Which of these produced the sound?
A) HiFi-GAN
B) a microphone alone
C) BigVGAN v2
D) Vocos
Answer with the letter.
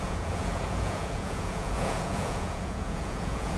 D